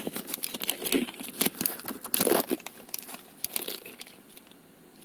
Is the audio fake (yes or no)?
no